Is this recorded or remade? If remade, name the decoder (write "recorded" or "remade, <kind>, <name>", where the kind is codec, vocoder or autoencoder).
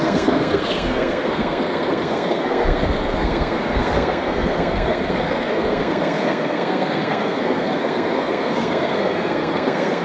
remade, codec, SNAC